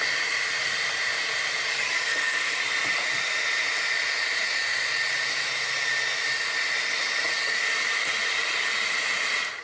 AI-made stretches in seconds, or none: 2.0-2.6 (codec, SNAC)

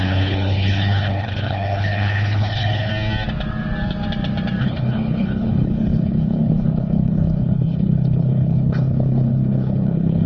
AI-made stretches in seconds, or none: 0.0-2.9 (codec, HILCodec); 4.6-10.3

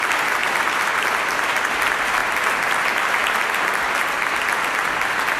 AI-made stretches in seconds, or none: none